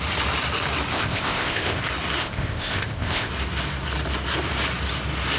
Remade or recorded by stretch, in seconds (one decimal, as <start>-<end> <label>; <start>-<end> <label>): 0.0-0.9 recorded; 0.9-1.8 remade; 1.8-2.2 recorded; 2.2-3.3 remade; 3.3-5.4 recorded